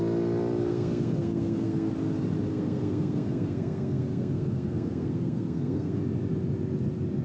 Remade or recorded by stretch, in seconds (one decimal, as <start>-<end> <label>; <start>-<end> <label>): 0.0-0.7 recorded; 0.7-1.9 remade; 1.9-2.5 recorded; 2.5-6.0 remade; 6.0-7.2 recorded